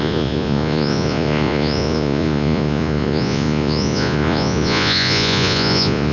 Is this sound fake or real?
fake